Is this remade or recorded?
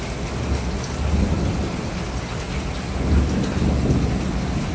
recorded